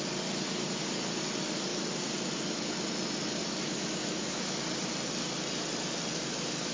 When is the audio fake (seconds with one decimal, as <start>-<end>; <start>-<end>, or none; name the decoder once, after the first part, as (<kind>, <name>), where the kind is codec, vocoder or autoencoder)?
3.4-4.6 (autoencoder, DAC-VAE)